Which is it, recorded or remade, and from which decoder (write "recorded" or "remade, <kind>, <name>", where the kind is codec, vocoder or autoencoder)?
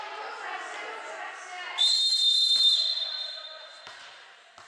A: recorded